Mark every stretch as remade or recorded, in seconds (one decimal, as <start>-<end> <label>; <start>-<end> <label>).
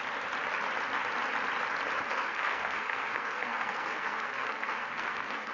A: 0.0-2.1 recorded; 2.1-5.5 remade